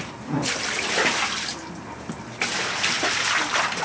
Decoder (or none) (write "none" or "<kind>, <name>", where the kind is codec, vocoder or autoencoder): none